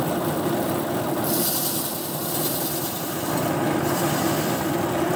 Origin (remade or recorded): recorded